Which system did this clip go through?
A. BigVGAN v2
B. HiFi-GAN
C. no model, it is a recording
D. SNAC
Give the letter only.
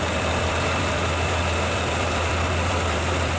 A